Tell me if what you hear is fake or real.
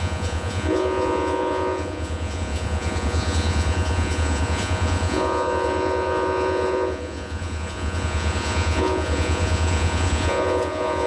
fake